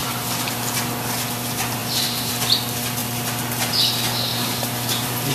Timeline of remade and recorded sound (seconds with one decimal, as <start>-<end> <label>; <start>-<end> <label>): 0.0-0.6 remade; 0.6-1.8 recorded; 1.8-2.3 remade; 2.3-4.3 recorded; 4.3-5.3 remade